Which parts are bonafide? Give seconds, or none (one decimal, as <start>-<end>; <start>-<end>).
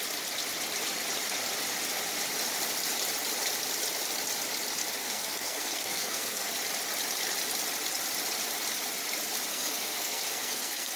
0.0-5.0; 6.5-9.5